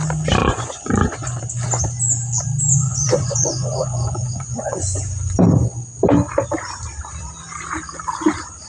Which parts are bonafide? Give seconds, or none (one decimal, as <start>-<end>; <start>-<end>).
0.0-0.4; 1.4-2.7; 5.4-8.7